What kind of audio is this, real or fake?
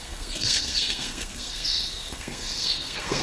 fake